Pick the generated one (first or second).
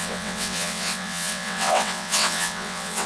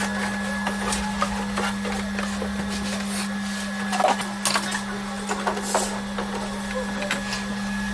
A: first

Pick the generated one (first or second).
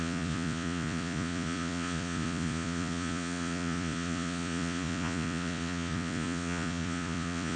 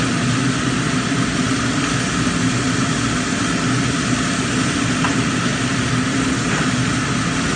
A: first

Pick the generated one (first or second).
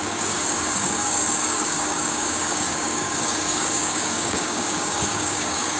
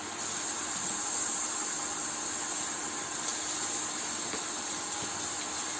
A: first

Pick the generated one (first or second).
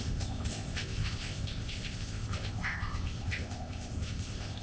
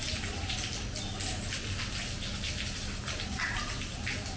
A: first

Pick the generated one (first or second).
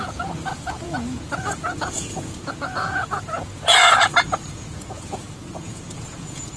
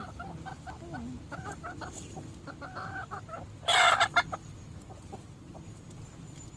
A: first